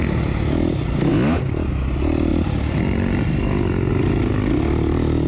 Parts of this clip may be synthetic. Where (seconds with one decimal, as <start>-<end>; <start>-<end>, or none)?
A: 2.3-3.9